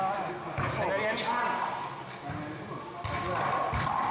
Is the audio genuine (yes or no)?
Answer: yes